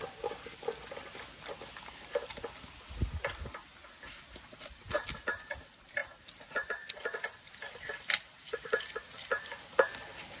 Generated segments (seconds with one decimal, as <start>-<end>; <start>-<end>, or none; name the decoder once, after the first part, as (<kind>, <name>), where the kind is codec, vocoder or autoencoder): none